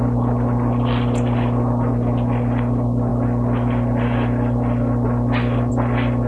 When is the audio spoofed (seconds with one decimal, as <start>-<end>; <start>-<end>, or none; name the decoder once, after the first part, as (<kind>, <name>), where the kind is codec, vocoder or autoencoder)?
none